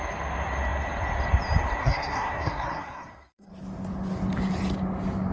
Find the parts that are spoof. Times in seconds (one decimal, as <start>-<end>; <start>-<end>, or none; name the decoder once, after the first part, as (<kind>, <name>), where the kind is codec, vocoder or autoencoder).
1.8-3.5 (codec, SNAC)